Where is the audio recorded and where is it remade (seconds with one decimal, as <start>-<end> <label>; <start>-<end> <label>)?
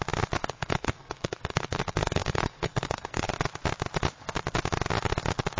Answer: 0.0-0.4 recorded; 0.4-3.3 remade; 3.3-5.6 recorded